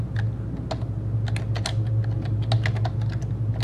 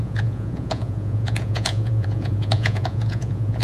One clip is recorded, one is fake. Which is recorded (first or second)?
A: first